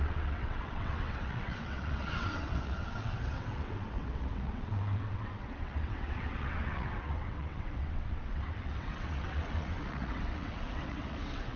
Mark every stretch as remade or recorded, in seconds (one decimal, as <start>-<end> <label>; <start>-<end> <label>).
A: 0.0-11.6 remade